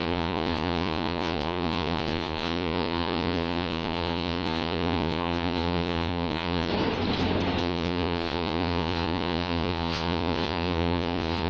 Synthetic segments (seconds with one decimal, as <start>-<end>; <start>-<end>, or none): 0.0-6.7; 7.6-11.5